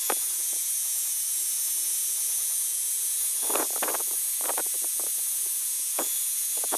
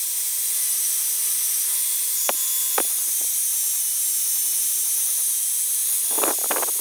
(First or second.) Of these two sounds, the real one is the second